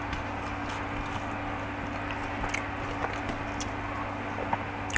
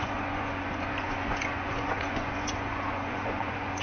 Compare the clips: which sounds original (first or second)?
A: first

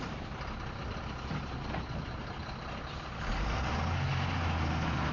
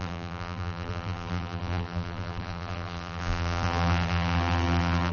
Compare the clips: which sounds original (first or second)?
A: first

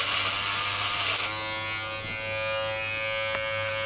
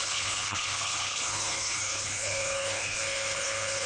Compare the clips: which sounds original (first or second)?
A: first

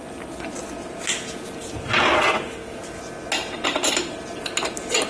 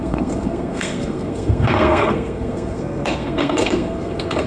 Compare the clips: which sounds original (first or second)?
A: first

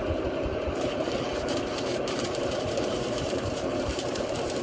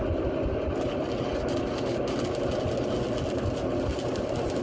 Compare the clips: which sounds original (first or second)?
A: second